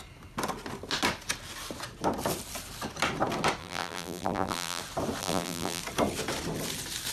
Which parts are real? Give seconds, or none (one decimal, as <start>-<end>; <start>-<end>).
0.0-3.6; 4.8-5.2; 5.8-7.1